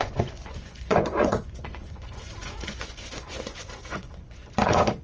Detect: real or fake fake